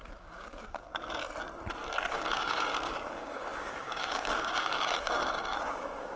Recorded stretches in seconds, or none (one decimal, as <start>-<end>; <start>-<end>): 0.9-2.1